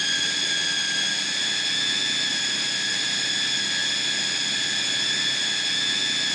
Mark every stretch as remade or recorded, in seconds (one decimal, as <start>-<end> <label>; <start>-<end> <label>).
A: 0.0-2.3 recorded; 2.3-3.3 remade; 3.3-6.3 recorded